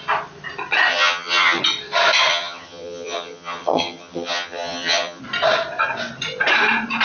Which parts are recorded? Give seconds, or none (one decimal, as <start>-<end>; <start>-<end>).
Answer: 0.0-0.9; 1.6-2.3; 5.2-7.0